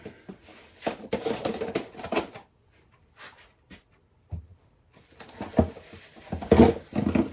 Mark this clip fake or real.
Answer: real